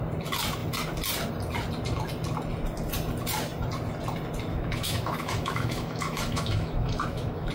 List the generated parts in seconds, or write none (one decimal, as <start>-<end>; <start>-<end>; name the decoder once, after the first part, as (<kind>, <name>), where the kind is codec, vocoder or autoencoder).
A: 4.5-7.5 (autoencoder, DAC-VAE)

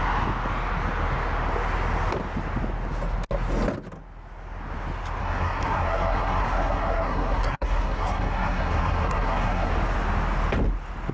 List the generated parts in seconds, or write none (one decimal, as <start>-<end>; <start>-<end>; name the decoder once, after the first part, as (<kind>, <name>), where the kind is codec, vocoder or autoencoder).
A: 5.2-9.7 (codec, SNAC)

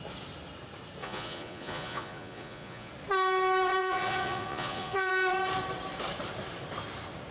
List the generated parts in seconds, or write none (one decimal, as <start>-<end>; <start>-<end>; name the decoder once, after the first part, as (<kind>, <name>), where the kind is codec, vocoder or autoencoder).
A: 1.0-2.9 (vocoder, Vocos); 3.8-5.1

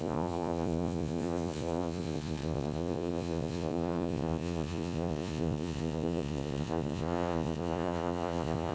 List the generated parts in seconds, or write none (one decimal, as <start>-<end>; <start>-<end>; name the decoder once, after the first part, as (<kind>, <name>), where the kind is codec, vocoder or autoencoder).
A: 0.0-8.7 (vocoder, Vocos)

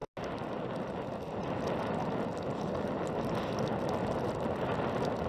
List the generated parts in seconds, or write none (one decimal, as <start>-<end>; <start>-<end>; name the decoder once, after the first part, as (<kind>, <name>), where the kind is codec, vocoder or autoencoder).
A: none